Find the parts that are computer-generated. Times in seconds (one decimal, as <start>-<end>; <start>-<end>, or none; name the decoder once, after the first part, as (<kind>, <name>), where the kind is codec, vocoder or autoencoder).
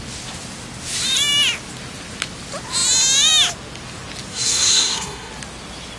4.3-5.3 (codec, SNAC)